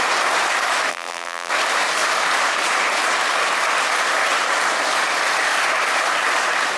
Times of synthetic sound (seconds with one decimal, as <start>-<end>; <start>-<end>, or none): 0.9-1.5